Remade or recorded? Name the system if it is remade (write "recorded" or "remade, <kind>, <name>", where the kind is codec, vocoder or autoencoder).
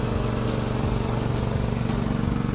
recorded